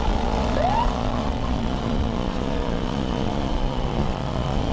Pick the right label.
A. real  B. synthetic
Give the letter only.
B